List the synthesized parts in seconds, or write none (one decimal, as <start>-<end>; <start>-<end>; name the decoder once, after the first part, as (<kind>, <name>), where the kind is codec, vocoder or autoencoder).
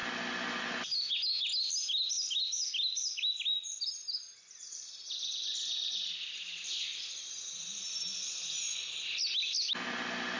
3.9-5.5 (vocoder, BigVGAN v2); 6.4-6.9